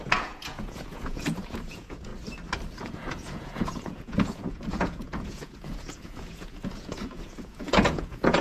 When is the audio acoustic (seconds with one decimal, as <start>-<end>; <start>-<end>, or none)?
2.1-2.8